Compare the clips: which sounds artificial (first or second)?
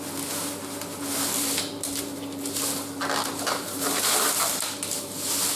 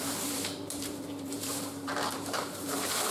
second